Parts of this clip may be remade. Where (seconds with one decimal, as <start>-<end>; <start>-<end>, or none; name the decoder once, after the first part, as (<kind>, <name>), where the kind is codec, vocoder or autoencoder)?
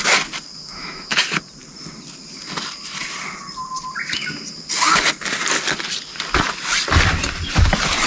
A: 0.6-1.2 (autoencoder, DAC-VAE)